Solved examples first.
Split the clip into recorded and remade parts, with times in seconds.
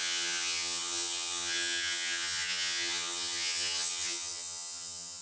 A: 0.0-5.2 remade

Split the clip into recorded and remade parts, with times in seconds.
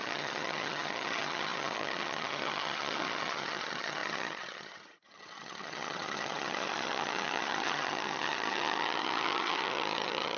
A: 0.0-10.4 remade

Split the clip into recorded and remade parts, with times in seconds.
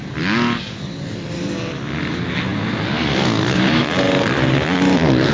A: 0.0-5.3 recorded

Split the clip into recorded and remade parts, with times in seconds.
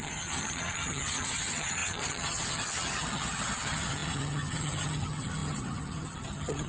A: 0.0-6.7 remade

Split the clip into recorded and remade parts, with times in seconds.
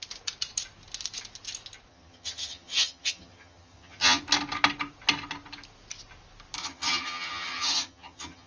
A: 0.0-1.9 recorded; 1.9-4.2 remade; 4.2-6.6 recorded; 6.6-8.5 remade